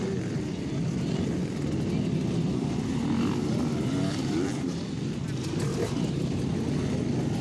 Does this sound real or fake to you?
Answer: real